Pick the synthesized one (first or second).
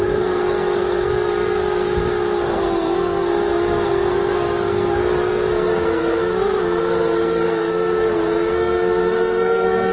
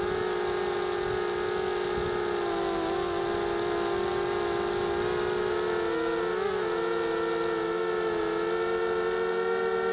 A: first